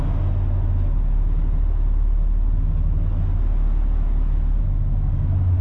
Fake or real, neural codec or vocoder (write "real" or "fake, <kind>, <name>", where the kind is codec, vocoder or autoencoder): real